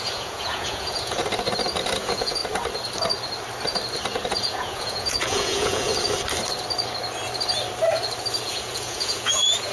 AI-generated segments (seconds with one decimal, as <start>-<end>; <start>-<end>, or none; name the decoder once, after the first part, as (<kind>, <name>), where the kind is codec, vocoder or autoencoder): 0.0-1.2 (vocoder, Vocos); 2.0-2.4; 4.3-5.9; 8.4-9.7

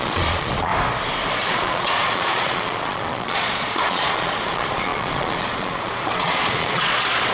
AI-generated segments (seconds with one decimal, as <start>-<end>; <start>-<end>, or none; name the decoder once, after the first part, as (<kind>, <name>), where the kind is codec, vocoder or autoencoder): 0.0-0.7 (vocoder, Vocos); 1.5-7.3

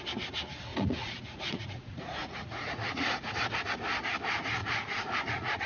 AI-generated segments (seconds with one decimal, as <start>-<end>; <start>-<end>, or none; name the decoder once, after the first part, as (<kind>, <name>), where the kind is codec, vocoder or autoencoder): 0.7-3.3 (vocoder, Vocos); 4.6-5.7

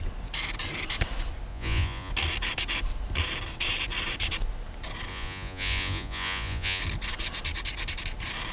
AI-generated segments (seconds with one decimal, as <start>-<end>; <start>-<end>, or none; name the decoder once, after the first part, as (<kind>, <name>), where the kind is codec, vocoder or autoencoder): 1.5-2.1 (vocoder, Vocos); 5.1-6.8

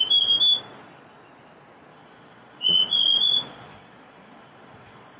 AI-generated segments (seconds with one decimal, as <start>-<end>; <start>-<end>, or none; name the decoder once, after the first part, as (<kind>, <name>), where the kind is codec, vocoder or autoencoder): 1.9-5.2 (vocoder, Vocos)

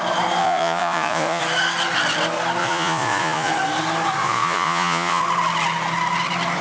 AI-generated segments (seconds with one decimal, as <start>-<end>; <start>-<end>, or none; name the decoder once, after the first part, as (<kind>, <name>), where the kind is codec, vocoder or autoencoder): 0.4-1.4 (vocoder, Vocos); 2.6-3.5; 4.2-5.2